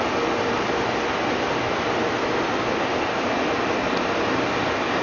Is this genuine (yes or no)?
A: yes